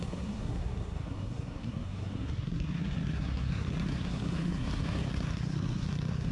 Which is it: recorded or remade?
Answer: remade